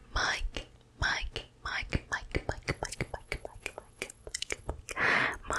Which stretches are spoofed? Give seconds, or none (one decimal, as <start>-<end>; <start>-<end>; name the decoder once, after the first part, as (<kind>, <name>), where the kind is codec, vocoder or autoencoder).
2.7-4.7 (vocoder, WaveNeXt)